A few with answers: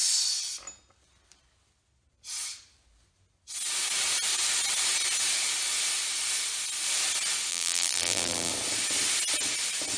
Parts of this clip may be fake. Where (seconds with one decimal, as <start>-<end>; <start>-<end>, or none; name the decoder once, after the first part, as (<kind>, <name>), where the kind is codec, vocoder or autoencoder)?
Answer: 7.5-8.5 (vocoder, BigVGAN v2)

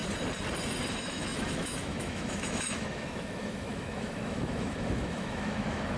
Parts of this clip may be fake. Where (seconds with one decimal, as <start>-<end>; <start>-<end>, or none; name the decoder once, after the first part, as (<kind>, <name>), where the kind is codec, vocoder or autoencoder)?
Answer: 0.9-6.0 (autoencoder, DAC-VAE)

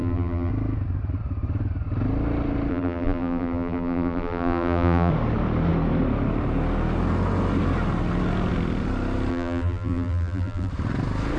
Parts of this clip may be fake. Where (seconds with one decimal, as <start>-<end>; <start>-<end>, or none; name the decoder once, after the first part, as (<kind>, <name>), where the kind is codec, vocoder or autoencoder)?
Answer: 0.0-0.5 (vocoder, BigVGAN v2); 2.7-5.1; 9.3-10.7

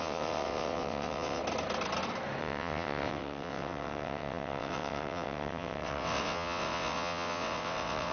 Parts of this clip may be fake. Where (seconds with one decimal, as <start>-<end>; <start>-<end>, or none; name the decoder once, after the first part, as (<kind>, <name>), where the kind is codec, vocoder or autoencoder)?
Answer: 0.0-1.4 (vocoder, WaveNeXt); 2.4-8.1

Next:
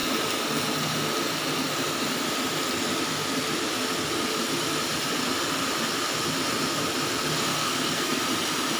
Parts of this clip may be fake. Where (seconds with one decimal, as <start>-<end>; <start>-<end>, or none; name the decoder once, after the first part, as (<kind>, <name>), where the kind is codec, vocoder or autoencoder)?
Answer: 7.5-8.2 (codec, SNAC)

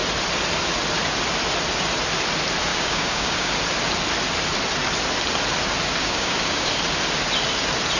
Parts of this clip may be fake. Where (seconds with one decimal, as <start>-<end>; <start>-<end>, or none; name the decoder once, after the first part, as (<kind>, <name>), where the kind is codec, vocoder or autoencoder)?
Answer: 2.7-3.5 (codec, DAC); 6.0-6.7

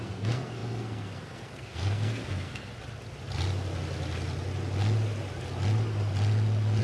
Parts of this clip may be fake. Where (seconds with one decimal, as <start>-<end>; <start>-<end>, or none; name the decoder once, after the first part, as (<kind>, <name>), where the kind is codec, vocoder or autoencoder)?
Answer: 0.0-2.7 (codec, SNAC)